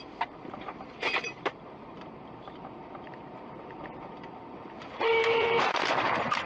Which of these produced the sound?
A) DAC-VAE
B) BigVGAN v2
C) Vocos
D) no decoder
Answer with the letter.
B